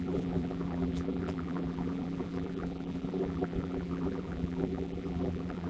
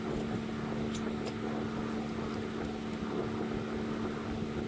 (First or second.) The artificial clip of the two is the first